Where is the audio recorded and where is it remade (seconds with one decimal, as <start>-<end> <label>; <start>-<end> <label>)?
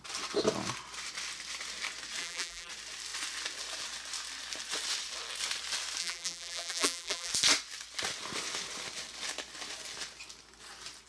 0.0-2.2 recorded; 2.2-2.7 remade; 2.7-6.0 recorded; 6.0-7.3 remade; 7.3-11.1 recorded